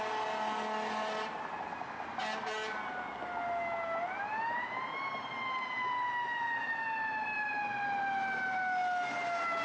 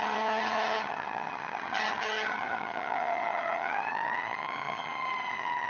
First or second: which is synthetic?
second